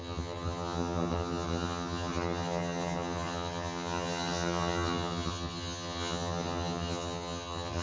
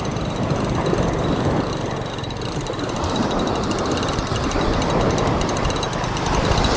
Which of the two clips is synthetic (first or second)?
first